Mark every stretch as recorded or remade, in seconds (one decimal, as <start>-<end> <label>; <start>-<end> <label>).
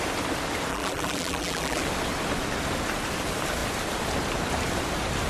0.0-0.7 recorded; 0.7-1.8 remade; 1.8-5.3 recorded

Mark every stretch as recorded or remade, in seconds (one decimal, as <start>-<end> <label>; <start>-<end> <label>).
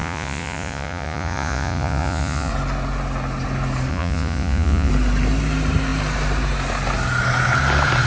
0.0-2.5 remade; 2.5-3.9 recorded; 3.9-4.9 remade; 4.9-8.1 recorded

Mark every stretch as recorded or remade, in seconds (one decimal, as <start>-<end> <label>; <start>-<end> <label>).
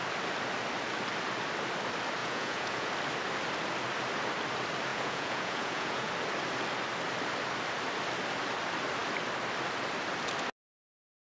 0.0-2.2 recorded; 2.2-2.9 remade; 2.9-4.9 recorded; 4.9-6.1 remade; 6.1-11.2 recorded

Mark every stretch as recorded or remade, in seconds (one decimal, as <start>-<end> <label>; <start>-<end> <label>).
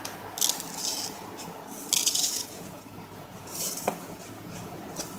0.0-2.0 recorded; 2.0-4.8 remade; 4.8-5.2 recorded